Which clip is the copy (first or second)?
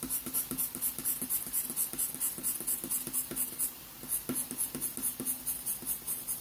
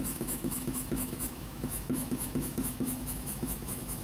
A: second